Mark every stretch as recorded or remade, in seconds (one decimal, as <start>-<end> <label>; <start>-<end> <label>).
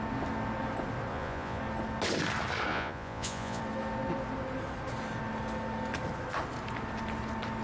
0.0-1.1 recorded; 1.1-1.6 remade; 1.6-2.7 recorded; 2.7-3.6 remade; 3.6-7.6 recorded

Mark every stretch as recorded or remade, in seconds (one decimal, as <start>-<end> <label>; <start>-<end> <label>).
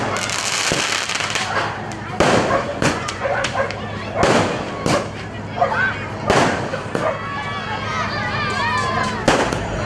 0.0-2.7 recorded; 2.7-3.5 remade; 3.5-9.9 recorded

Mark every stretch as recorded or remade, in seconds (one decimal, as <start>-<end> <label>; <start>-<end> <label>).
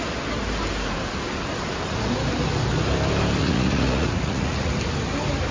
0.0-3.4 recorded; 3.4-4.7 remade; 4.7-5.5 recorded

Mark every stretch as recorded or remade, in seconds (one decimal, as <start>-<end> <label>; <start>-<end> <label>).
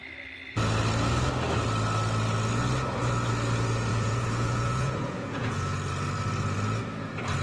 0.0-3.9 recorded; 3.9-5.9 remade; 5.9-7.4 recorded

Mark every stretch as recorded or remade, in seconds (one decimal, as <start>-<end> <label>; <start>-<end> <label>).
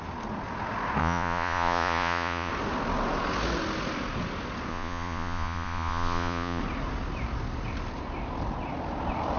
0.0-1.0 recorded; 1.0-2.5 remade; 2.5-4.7 recorded; 4.7-6.6 remade; 6.6-9.4 recorded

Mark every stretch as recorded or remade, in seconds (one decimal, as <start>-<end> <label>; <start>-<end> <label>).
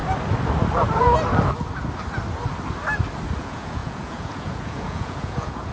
0.0-3.4 recorded; 3.4-5.7 remade